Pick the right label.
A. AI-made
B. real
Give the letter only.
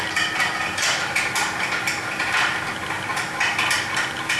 B